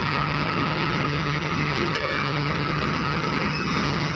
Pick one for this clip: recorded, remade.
remade